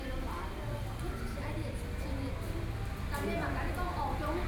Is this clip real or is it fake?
real